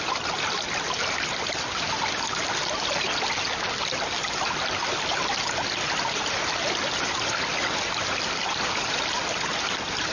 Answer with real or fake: real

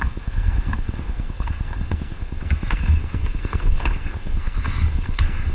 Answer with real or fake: fake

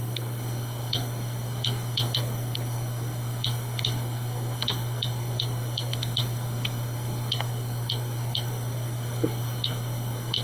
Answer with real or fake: fake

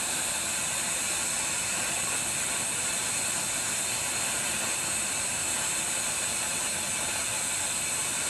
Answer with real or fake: real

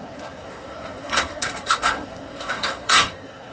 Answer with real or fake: fake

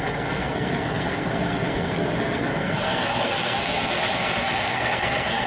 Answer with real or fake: fake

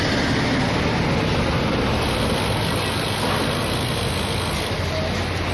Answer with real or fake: real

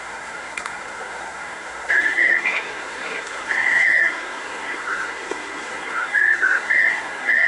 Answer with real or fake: fake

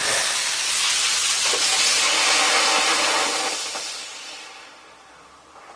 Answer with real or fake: real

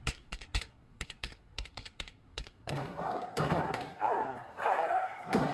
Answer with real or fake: fake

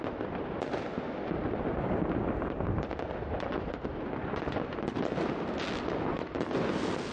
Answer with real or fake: real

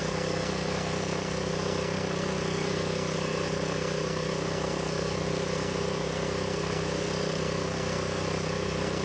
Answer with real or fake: fake